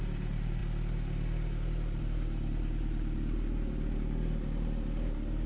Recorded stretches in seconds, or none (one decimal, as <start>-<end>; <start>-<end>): 0.6-2.0